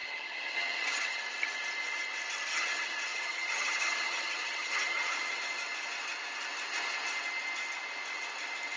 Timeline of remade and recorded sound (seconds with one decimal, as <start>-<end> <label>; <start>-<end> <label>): 0.0-1.2 remade; 1.2-2.5 recorded; 2.5-5.4 remade; 5.4-8.8 recorded